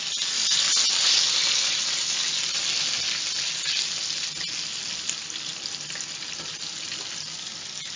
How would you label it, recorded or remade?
recorded